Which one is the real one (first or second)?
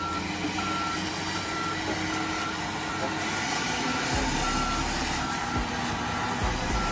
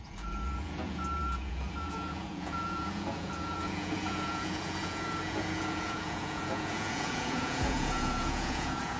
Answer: first